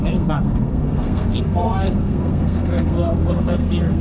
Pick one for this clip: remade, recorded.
remade